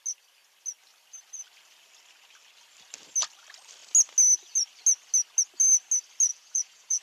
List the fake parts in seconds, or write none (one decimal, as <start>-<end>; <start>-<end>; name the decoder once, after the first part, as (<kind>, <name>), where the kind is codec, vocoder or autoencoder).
6.3-7.0 (vocoder, Vocos)